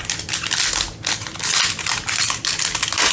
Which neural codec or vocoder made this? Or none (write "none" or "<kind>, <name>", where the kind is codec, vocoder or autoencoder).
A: none